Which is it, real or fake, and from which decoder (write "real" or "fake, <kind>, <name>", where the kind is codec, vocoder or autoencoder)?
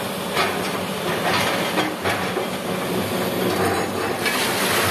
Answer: real